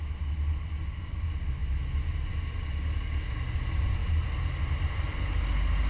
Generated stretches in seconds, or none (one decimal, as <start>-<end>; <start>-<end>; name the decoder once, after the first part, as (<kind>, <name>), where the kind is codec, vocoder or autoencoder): 4.0-4.8 (vocoder, BigVGAN v2)